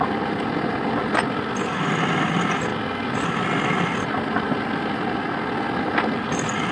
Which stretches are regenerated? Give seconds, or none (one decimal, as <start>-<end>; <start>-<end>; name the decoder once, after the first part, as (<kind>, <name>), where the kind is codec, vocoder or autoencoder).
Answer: none